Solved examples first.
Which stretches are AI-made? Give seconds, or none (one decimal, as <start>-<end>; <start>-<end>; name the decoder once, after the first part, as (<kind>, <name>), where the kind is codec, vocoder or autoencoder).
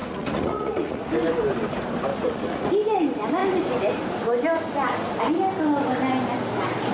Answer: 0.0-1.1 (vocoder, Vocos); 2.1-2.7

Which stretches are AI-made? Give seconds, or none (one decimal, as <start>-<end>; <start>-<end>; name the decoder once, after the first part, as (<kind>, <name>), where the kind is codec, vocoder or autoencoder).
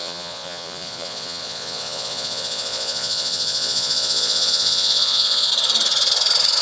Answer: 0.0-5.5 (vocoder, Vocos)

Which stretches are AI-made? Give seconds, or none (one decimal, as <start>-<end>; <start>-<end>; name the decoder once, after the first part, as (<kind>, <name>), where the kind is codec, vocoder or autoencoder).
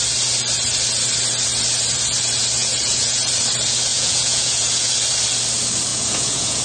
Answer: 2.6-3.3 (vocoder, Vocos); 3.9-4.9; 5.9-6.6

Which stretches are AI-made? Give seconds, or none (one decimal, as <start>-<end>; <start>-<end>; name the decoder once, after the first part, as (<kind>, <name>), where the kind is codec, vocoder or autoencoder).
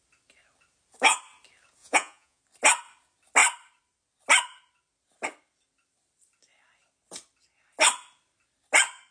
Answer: 1.8-2.4 (vocoder, Vocos)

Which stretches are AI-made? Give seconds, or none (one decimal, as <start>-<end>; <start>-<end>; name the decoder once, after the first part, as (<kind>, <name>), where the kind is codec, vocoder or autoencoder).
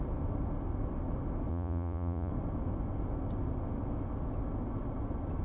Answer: 1.5-2.3 (vocoder, Vocos)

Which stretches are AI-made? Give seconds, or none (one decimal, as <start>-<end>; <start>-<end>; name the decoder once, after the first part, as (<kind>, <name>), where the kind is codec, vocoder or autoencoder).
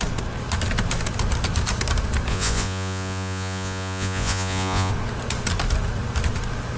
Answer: 2.3-4.9 (vocoder, Vocos)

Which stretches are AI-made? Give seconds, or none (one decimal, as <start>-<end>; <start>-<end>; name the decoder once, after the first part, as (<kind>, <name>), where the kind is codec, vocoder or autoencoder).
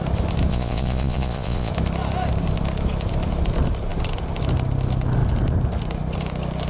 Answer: 0.5-1.7 (vocoder, Vocos)